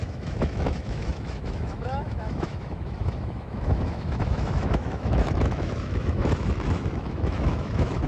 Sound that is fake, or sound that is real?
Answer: fake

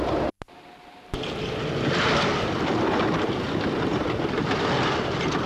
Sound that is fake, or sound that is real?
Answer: real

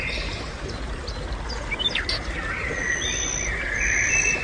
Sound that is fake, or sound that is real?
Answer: real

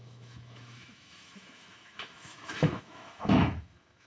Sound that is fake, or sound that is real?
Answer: fake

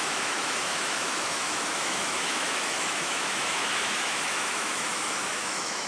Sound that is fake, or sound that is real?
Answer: fake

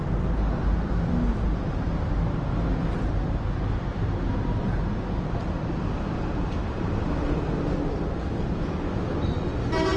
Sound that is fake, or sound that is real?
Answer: real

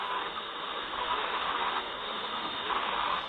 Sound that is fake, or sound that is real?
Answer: fake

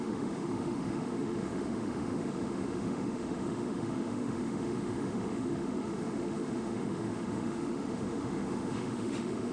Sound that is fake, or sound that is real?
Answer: fake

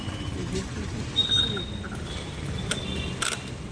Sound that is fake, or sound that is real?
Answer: real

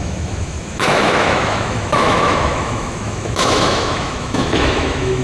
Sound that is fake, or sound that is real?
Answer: fake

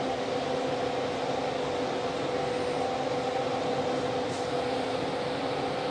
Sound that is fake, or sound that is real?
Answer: real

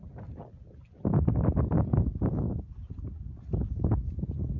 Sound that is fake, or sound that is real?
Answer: real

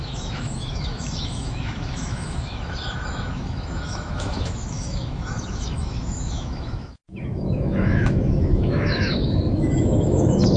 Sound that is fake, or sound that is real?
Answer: fake